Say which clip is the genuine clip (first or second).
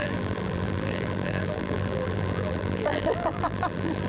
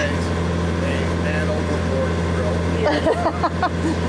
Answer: second